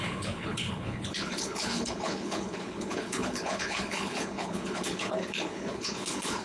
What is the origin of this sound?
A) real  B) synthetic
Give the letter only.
B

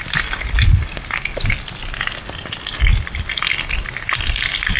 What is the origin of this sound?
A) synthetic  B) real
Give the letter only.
B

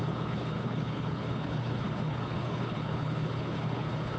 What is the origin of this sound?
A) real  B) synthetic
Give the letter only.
B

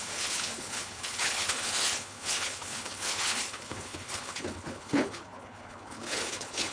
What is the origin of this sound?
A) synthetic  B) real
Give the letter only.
A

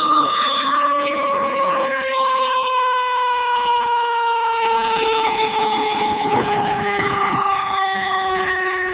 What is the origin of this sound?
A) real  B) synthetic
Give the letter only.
B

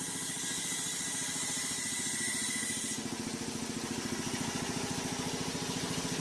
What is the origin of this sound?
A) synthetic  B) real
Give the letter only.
B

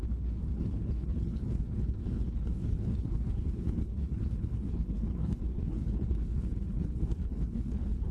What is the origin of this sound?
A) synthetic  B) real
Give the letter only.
A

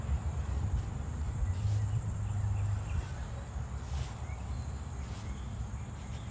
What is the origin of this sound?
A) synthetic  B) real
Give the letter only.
B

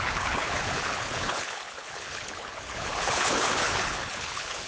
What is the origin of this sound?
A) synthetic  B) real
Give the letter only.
A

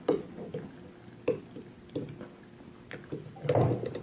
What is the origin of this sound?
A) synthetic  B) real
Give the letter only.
B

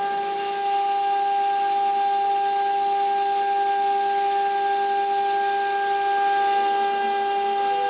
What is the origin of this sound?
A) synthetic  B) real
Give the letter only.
B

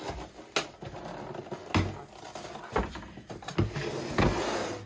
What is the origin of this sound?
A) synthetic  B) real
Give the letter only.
B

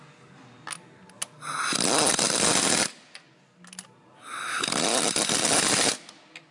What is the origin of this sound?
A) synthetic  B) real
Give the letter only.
B